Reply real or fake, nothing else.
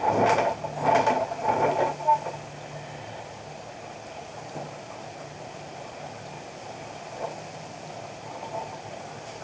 real